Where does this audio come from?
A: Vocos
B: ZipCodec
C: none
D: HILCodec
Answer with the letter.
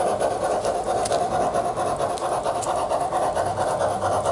C